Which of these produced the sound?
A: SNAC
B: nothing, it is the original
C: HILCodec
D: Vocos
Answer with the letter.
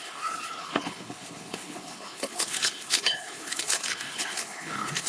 C